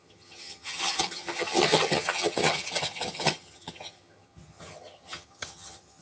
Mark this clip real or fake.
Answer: fake